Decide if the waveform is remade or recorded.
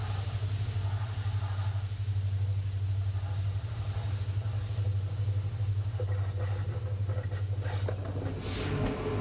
recorded